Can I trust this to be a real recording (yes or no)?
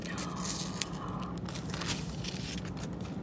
yes